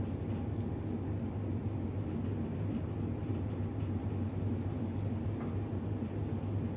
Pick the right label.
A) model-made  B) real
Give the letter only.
B